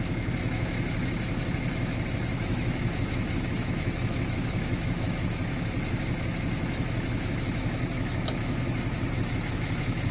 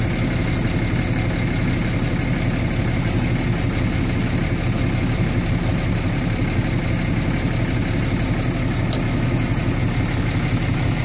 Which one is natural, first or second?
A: second